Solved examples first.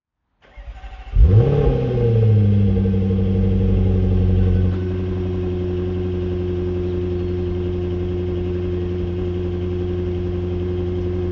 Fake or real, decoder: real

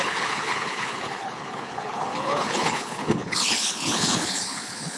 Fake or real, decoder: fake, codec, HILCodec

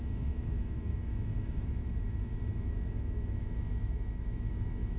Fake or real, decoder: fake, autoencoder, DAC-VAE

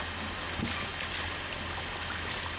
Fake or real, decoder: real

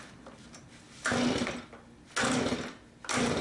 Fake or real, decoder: real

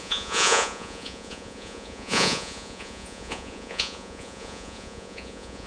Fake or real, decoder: fake, vocoder, Vocos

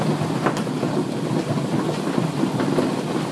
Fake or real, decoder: real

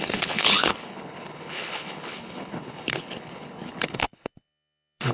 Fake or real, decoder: fake, codec, HILCodec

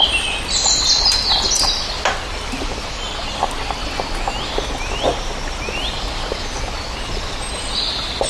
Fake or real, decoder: real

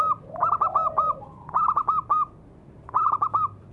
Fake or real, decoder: real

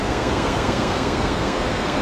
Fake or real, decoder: fake, codec, SNAC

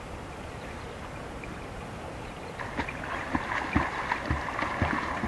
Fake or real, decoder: real